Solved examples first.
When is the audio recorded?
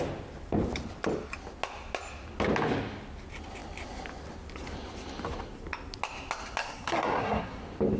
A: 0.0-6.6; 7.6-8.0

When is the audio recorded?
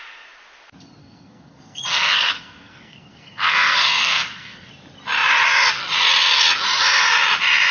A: 0.0-1.0; 4.7-7.7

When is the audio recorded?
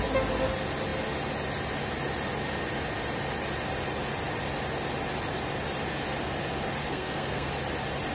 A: 0.0-6.8; 7.5-8.1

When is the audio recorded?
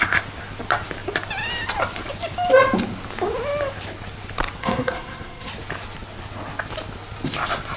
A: 0.0-4.6; 5.5-7.8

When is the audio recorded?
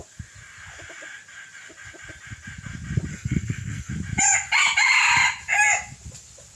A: 0.0-3.1; 3.9-6.6